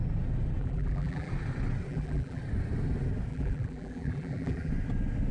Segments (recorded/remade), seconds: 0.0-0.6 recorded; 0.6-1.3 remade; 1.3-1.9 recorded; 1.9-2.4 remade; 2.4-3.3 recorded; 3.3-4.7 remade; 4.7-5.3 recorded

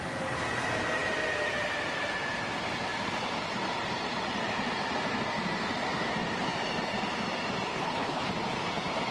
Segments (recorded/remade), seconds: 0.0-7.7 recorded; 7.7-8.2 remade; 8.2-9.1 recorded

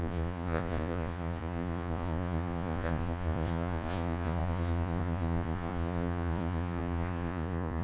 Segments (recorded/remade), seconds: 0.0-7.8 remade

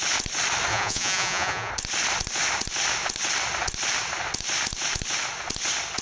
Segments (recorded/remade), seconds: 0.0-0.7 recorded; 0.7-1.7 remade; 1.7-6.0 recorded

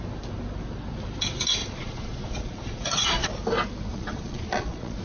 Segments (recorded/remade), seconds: 0.0-1.6 recorded; 1.6-3.3 remade; 3.3-3.9 recorded; 3.9-5.0 remade